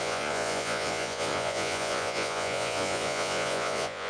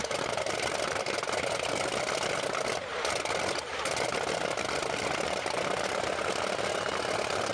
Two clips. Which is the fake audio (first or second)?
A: first